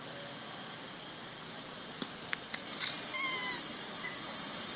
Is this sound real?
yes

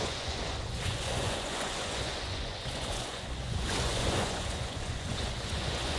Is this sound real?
no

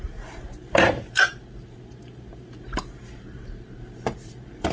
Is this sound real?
no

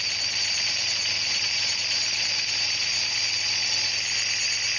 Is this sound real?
yes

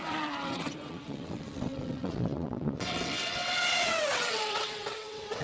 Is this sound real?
no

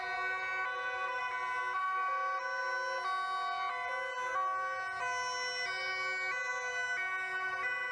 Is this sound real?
yes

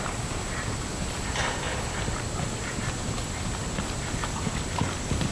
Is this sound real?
yes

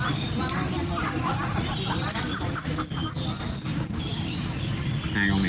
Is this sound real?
yes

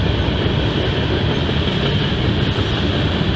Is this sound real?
yes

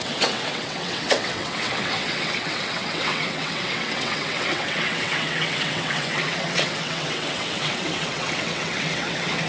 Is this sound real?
no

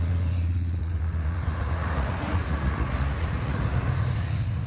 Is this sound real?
no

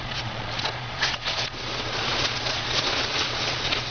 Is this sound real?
no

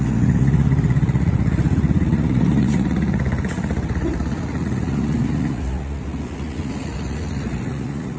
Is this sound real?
no